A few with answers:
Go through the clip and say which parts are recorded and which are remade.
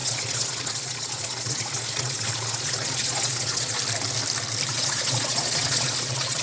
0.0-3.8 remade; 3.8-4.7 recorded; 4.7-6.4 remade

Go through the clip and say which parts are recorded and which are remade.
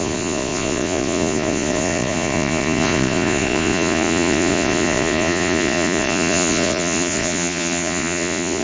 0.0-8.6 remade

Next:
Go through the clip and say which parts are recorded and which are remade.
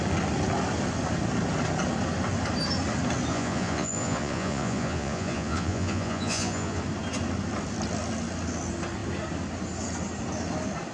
0.0-3.3 recorded; 3.3-6.8 remade; 6.8-10.9 recorded